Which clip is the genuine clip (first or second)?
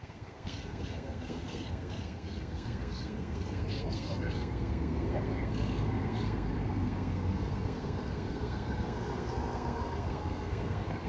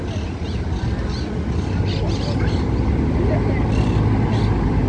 second